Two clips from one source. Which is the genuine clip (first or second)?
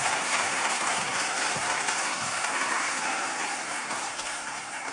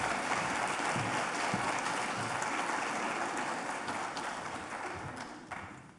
second